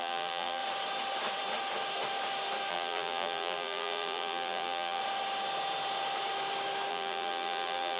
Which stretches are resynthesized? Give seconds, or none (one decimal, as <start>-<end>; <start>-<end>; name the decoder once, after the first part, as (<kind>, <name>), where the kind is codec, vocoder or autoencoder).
0.0-0.6 (vocoder, BigVGAN v2); 2.7-5.0; 6.9-8.0